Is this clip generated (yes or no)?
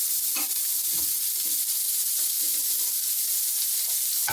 no